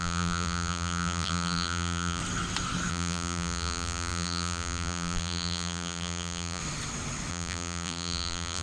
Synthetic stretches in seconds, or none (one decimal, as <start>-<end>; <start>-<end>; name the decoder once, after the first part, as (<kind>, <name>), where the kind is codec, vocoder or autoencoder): 0.0-2.2 (vocoder, BigVGAN v2); 2.9-6.6; 7.3-8.6